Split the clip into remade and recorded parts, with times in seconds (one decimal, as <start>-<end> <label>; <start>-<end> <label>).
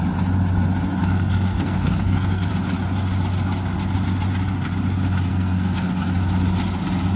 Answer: 0.0-1.0 recorded; 1.0-2.5 remade; 2.5-5.3 recorded; 5.3-5.9 remade; 5.9-7.2 recorded